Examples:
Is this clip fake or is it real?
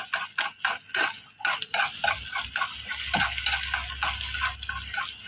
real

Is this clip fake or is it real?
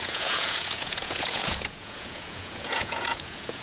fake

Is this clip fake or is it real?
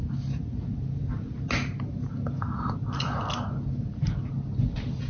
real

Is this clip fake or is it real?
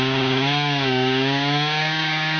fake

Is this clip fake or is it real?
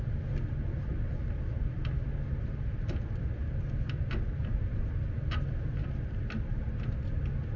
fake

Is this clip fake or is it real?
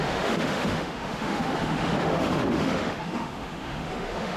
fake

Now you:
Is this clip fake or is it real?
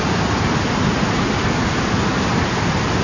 real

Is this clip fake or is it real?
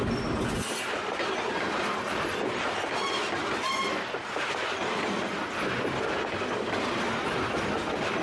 real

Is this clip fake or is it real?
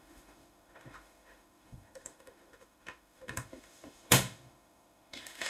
fake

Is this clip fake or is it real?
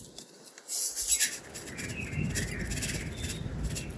real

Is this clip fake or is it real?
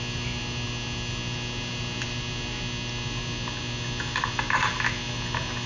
real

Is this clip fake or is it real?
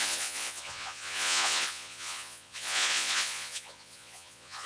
fake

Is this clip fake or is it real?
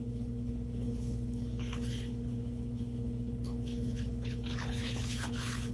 fake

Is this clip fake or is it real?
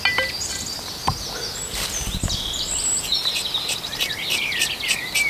real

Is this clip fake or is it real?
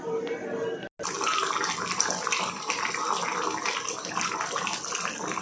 real